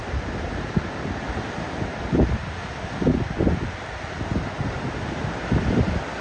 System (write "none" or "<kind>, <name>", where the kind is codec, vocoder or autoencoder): none